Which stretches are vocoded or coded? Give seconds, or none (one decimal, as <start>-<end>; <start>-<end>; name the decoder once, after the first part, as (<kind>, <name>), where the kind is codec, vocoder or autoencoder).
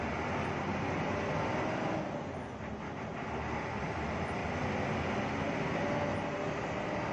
0.7-1.3 (vocoder, BigVGAN v2)